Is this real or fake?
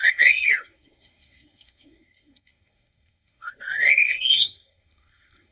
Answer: fake